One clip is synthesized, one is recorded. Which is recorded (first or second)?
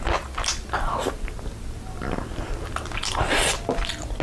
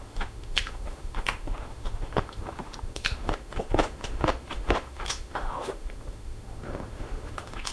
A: first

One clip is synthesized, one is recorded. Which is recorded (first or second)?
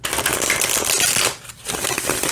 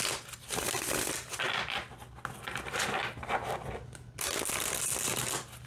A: second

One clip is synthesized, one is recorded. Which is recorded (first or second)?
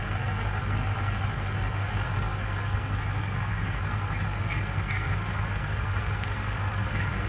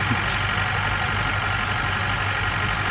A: second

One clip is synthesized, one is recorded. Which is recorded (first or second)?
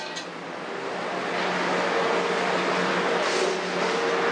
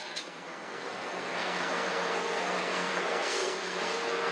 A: first